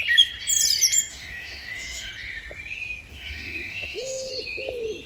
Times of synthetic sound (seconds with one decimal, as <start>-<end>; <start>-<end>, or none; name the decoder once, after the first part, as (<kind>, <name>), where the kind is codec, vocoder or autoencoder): 1.1-2.1 (autoencoder, DAC-VAE); 3.1-4.3